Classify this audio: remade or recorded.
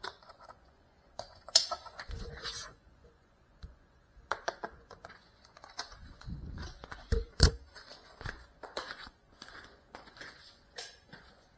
remade